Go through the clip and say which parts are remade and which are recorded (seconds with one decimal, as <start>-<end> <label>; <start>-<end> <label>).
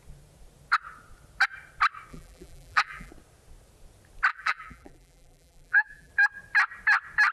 0.0-2.1 recorded; 2.1-3.1 remade; 3.1-4.3 recorded; 4.3-6.1 remade; 6.1-7.3 recorded